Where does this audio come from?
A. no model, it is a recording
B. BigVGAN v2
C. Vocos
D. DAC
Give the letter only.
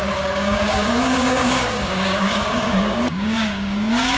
D